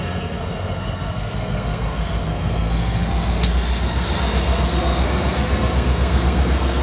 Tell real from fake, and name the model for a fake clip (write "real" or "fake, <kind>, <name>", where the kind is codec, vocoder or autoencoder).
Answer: fake, codec, SNAC